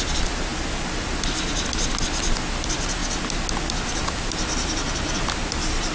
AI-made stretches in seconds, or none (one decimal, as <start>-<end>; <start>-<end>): none

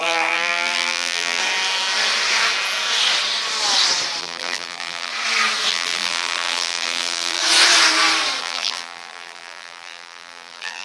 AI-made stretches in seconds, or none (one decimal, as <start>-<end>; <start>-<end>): 0.0-1.4; 4.2-5.1; 5.7-7.4; 8.4-10.8

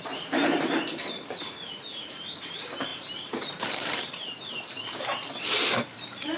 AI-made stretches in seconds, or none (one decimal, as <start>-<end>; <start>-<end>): 0.0-6.4

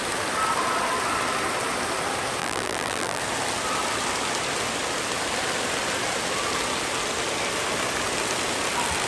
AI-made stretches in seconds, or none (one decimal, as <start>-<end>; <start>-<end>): 2.4-3.2

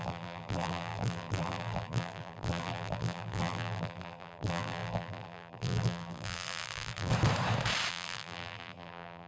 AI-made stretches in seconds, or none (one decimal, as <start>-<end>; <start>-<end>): 0.0-7.1; 7.9-9.3